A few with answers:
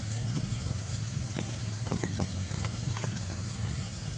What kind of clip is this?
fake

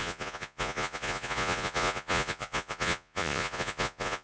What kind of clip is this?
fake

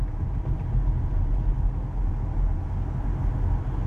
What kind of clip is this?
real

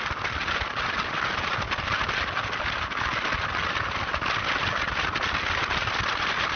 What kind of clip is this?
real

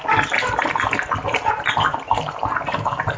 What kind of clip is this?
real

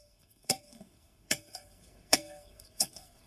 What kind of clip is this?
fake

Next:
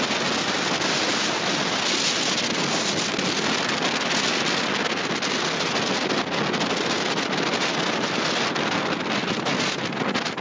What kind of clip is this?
real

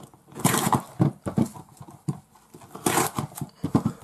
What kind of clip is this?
real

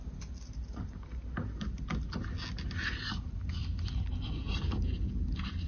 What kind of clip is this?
real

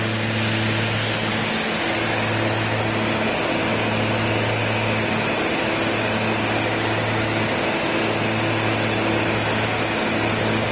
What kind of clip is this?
real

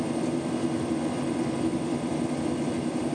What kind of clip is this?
fake